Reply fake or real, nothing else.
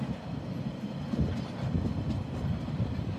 real